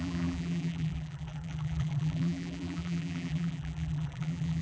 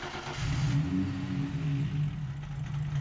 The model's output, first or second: first